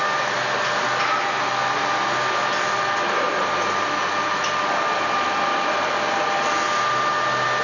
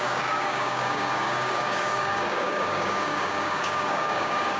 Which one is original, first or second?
first